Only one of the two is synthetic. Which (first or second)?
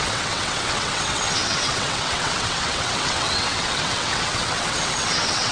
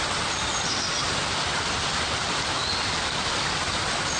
first